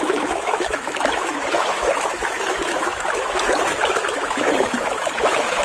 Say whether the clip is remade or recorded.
remade